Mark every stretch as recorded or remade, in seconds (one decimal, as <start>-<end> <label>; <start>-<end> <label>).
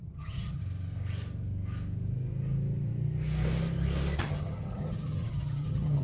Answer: 0.0-0.6 remade; 0.6-4.2 recorded; 4.2-6.0 remade